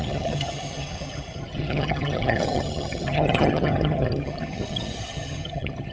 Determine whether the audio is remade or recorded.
remade